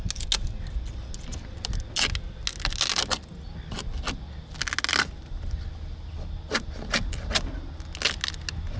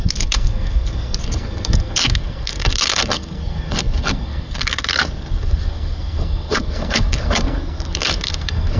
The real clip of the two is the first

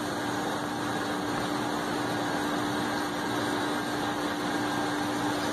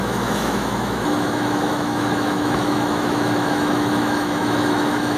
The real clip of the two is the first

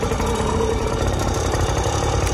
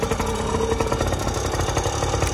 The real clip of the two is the second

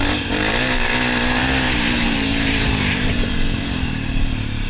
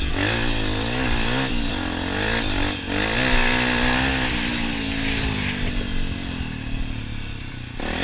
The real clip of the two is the second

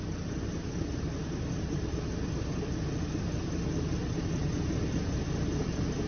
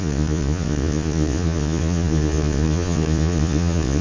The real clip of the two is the first